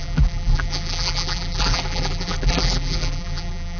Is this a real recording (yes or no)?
no